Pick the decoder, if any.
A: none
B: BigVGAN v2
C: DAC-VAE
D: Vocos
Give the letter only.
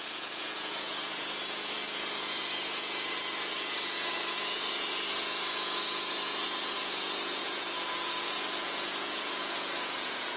D